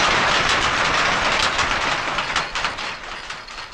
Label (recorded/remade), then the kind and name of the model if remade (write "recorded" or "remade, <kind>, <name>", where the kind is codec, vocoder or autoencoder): recorded